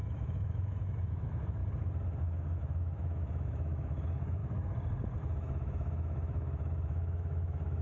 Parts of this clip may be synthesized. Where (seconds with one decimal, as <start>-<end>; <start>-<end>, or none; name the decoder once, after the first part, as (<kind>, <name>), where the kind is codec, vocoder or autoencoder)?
0.0-1.6 (autoencoder, DAC-VAE); 2.2-4.4; 5.2-7.8